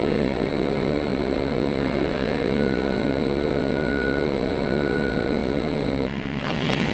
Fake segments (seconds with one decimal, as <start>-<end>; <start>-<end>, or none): 0.0-6.9